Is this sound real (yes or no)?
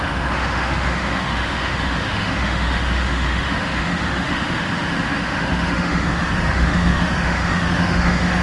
no